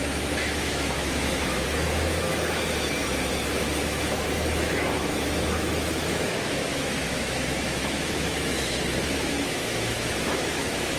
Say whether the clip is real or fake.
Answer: fake